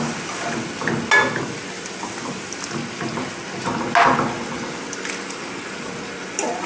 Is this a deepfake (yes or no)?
no